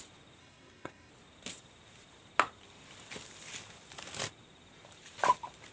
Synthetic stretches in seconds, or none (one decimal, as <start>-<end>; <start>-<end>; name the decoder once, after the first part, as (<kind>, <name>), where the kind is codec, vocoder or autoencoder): 0.4-1.1 (codec, SNAC)